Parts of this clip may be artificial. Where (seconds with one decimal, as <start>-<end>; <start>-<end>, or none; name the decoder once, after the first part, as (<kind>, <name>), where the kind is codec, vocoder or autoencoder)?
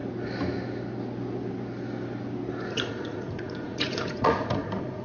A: 2.7-5.0 (vocoder, Vocos)